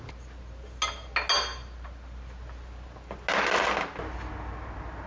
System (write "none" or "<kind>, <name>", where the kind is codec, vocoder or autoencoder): none